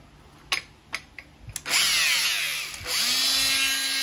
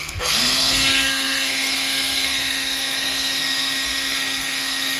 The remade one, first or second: second